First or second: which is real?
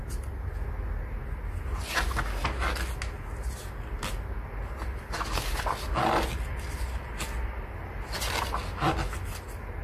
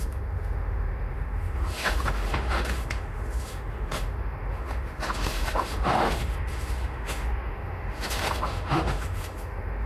first